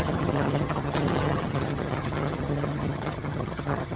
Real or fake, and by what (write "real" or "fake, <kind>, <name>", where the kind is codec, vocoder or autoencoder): fake, vocoder, HiFi-GAN